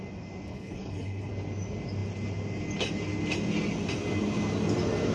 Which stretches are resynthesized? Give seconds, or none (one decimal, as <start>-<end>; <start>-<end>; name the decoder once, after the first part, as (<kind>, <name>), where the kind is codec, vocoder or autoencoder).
0.5-1.3 (codec, HILCodec)